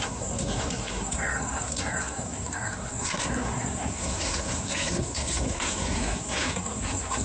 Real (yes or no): no